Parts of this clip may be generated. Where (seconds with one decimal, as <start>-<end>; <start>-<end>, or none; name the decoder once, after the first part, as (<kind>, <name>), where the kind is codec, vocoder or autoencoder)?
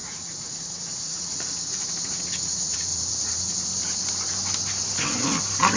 0.0-3.5 (vocoder, Vocos)